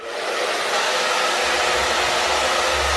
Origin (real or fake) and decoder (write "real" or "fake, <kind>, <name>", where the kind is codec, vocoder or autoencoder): real